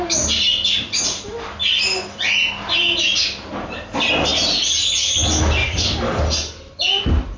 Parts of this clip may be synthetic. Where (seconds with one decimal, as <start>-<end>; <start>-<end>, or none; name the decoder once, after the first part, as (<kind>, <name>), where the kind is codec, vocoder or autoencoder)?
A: 5.6-6.2 (codec, DAC)